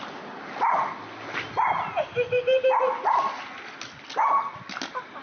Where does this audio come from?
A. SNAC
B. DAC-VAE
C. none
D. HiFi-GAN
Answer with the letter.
C